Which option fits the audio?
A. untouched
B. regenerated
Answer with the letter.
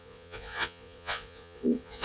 B